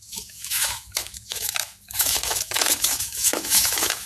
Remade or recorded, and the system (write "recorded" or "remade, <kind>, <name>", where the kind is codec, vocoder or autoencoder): remade, autoencoder, DAC-VAE